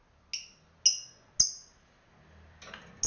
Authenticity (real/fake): real